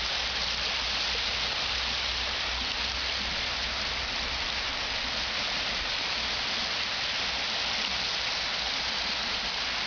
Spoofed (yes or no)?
no